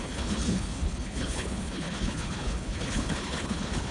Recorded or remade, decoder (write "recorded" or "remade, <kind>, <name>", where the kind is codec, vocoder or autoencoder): remade, codec, HILCodec